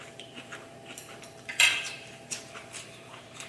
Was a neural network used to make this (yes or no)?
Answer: yes